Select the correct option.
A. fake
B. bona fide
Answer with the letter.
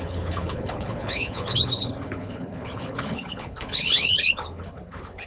A